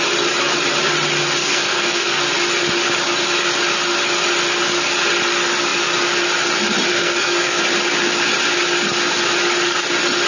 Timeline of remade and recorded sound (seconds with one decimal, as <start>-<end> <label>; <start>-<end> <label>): 0.0-1.4 recorded; 1.4-2.2 remade; 2.2-6.9 recorded; 6.9-7.6 remade; 7.6-10.3 recorded